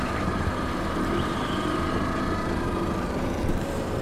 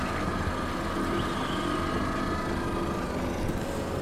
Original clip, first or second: second